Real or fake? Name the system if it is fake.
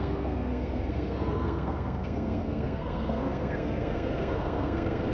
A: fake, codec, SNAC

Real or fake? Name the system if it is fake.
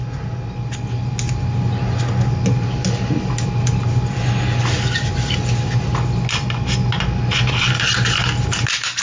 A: real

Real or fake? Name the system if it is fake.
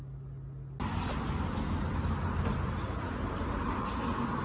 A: real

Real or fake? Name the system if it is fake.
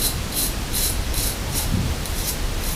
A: fake, vocoder, BigVGAN v2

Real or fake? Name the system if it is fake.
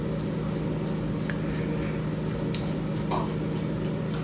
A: real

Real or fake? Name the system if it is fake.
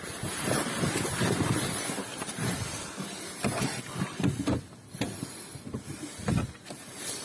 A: fake, vocoder, BigVGAN v2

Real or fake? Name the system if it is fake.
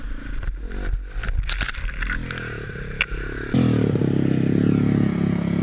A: real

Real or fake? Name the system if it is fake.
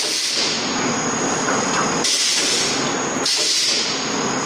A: real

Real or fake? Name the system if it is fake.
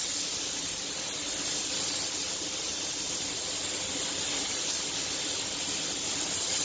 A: real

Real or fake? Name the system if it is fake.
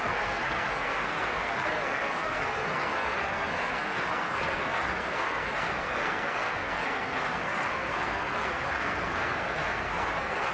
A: fake, codec, SNAC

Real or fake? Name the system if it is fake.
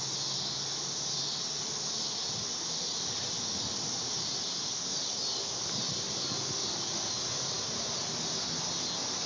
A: real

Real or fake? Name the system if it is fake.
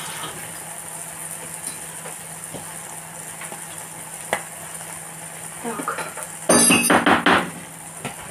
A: real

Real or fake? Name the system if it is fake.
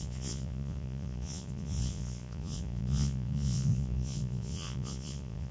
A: fake, vocoder, Vocos